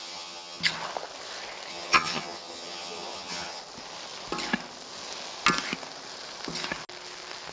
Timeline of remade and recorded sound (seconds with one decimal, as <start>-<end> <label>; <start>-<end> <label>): 0.0-0.6 remade; 0.6-1.7 recorded; 1.7-3.6 remade; 3.6-7.5 recorded